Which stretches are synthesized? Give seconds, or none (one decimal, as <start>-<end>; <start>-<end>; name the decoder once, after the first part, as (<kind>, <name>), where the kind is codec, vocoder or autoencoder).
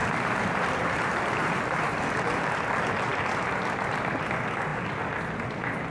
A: 0.0-2.4 (vocoder, BigVGAN v2)